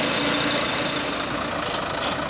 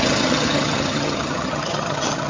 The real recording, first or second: first